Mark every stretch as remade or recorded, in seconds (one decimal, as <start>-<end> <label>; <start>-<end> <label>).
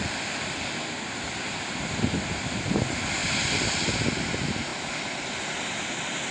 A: 0.0-6.3 recorded